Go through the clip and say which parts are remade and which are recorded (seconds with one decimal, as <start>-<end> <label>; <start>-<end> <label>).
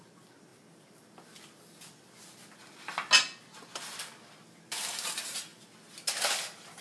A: 0.0-6.8 recorded